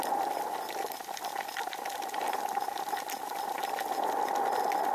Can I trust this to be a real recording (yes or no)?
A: yes